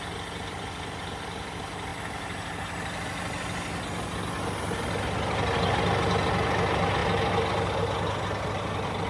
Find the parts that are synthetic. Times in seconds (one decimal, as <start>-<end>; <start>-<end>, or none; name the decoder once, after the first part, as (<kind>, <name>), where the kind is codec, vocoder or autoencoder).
none